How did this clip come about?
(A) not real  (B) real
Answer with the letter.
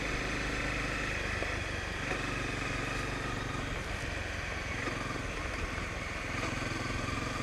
B